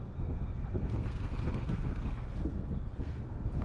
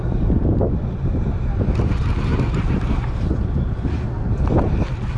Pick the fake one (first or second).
first